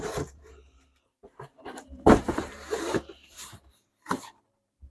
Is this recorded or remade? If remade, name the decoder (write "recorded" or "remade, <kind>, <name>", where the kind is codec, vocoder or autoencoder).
remade, vocoder, BigVGAN v2